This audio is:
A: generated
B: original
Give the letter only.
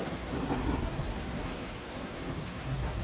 A